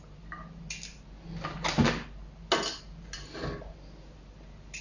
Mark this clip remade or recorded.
recorded